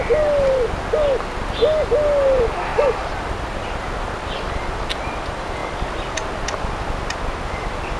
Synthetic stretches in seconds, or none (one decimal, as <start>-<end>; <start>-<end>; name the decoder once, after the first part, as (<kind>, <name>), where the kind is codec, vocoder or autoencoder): none